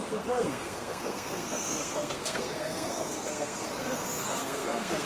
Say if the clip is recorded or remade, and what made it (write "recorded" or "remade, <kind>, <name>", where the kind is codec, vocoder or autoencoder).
remade, codec, SNAC